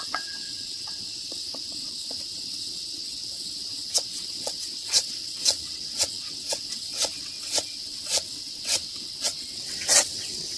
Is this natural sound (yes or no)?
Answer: no